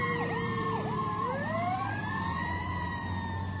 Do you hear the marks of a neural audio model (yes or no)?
yes